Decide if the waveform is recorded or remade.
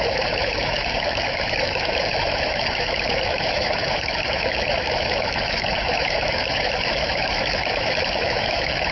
remade